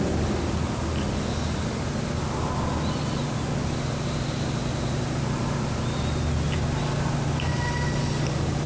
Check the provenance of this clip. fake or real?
real